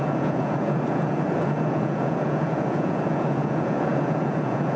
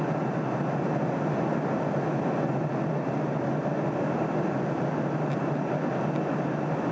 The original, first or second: second